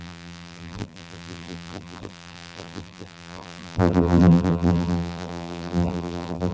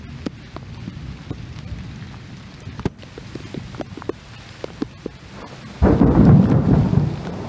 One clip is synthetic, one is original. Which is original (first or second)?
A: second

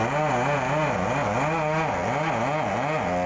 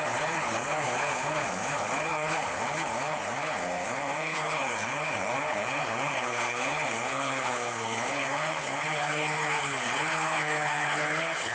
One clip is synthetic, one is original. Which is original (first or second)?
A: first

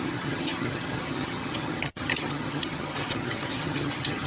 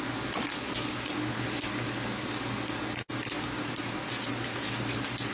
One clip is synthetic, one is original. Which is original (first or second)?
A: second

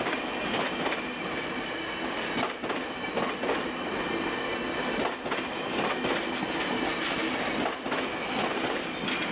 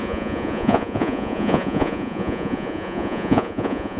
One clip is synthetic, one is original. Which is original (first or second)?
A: first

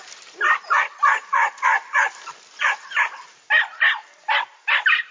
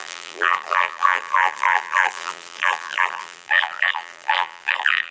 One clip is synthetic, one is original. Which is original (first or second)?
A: first